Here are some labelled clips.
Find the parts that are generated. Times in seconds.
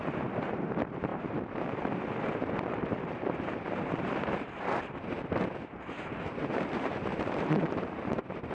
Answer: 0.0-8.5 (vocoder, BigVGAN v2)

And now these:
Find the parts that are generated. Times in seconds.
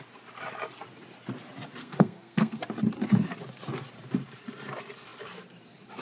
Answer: 1.8-2.6 (codec, SNAC)